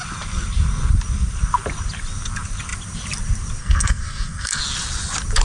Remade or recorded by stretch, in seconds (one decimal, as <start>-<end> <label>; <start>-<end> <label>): 0.0-3.6 recorded; 3.6-4.6 remade; 4.6-5.4 recorded